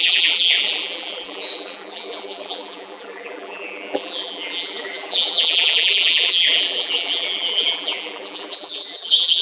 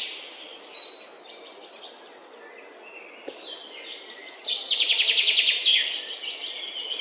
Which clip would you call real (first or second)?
second